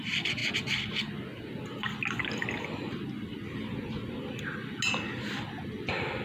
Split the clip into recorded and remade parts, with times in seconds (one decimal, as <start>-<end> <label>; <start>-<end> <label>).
0.0-6.2 recorded